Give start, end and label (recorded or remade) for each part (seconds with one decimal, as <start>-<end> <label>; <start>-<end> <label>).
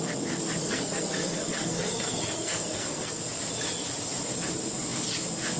0.0-0.6 recorded; 0.6-3.2 remade; 3.2-5.6 recorded